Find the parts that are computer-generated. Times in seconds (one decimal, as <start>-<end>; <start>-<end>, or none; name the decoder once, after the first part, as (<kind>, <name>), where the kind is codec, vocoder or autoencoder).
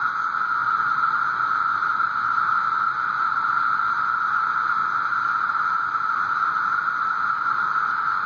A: 0.0-1.9 (vocoder, Vocos); 2.5-8.3